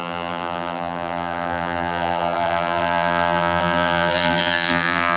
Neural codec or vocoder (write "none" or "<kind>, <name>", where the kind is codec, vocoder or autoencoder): vocoder, BigVGAN v2